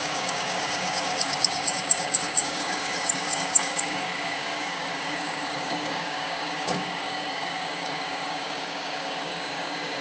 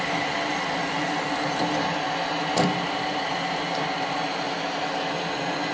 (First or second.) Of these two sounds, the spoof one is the first